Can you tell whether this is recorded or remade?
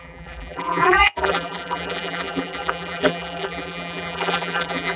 remade